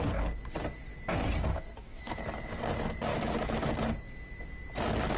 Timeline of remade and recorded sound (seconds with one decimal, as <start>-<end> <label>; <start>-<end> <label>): 0.0-1.5 recorded; 1.5-2.2 remade; 2.2-3.1 recorded; 3.1-3.7 remade; 3.7-5.2 recorded